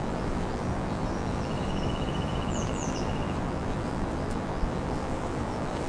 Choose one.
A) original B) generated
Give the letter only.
B